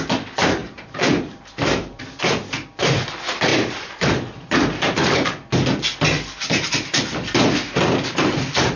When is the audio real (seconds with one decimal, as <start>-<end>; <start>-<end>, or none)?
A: 0.0-0.6; 2.2-3.5; 4.1-8.8